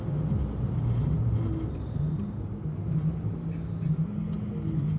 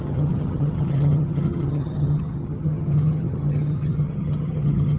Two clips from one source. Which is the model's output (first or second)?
second